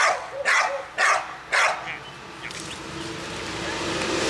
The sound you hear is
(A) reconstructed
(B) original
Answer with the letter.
B